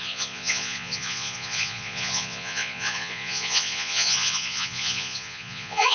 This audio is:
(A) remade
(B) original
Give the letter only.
A